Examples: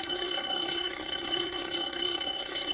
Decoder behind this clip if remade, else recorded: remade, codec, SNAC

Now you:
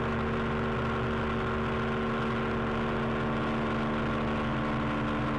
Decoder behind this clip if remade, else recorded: recorded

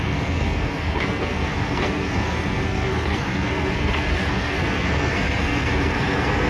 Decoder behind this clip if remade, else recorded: remade, codec, SNAC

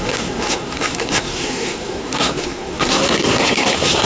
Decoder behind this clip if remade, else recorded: remade, codec, SNAC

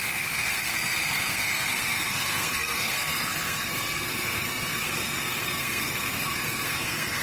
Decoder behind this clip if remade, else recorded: remade, codec, SNAC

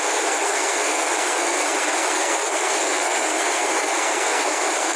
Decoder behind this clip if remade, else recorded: remade, codec, SNAC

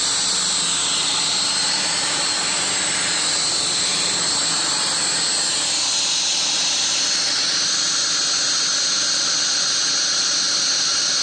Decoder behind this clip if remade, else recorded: recorded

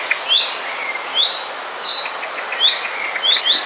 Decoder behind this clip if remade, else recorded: recorded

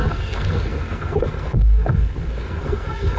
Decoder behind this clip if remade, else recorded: remade, codec, SNAC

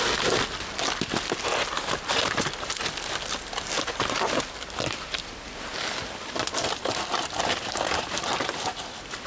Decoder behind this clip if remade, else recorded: recorded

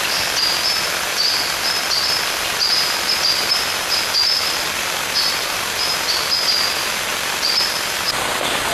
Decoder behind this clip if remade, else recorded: recorded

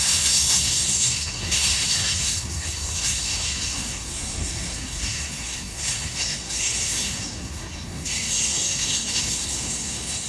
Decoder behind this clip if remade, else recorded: remade, codec, SNAC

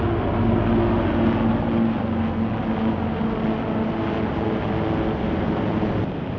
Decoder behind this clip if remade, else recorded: recorded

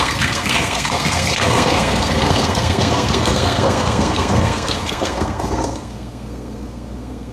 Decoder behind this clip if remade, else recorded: remade, codec, SNAC